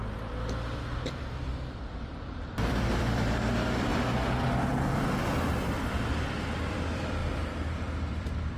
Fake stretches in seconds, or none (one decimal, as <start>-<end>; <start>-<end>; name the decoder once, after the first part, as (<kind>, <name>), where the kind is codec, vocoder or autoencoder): 0.0-3.9 (vocoder, BigVGAN v2); 6.7-8.6